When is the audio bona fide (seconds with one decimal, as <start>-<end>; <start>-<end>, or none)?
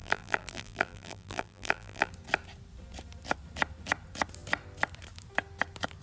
2.1-6.0